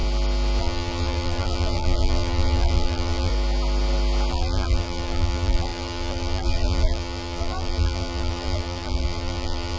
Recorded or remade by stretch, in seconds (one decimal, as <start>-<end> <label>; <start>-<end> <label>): 0.0-0.6 recorded; 0.6-3.3 remade; 3.3-4.3 recorded; 4.3-9.8 remade